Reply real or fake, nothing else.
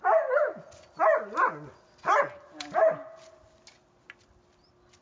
real